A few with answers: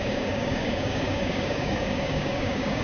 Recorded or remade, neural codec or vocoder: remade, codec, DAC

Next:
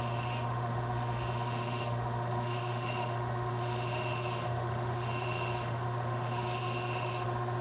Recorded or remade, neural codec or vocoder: remade, autoencoder, DAC-VAE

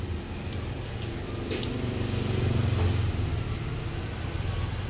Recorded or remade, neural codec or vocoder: recorded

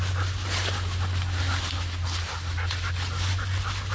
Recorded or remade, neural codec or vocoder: recorded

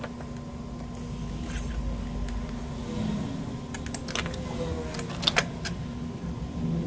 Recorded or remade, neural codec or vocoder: recorded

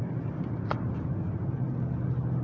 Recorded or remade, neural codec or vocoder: recorded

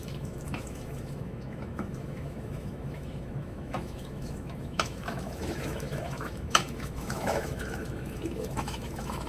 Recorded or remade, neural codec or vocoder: remade, autoencoder, DAC-VAE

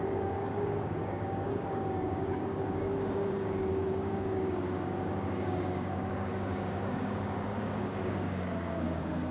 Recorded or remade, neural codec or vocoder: remade, codec, DAC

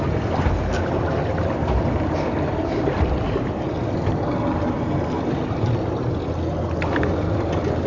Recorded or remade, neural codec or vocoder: recorded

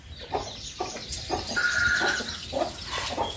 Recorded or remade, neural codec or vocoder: recorded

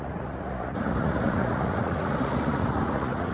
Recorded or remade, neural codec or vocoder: remade, vocoder, Vocos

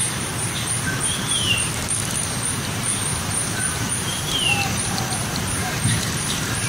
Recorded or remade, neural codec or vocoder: remade, vocoder, BigVGAN v2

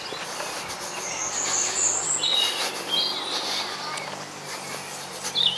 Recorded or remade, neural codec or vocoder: recorded